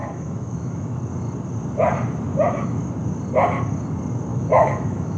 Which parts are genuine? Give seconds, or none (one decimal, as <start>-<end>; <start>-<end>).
1.0-2.3; 2.9-4.3